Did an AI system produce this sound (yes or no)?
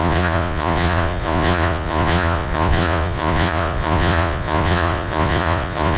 yes